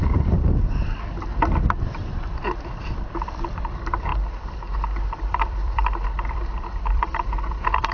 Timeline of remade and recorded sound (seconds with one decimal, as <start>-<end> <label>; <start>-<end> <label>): 0.0-1.3 remade; 1.3-1.9 recorded; 1.9-7.9 remade